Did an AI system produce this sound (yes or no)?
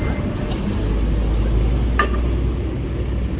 no